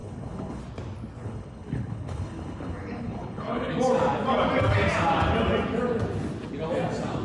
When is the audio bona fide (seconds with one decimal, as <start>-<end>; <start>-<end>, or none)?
0.6-1.2; 3.7-7.2